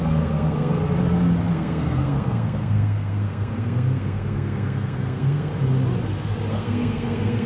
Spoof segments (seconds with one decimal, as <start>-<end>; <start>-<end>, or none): 0.0-0.8; 1.5-5.5; 6.5-7.5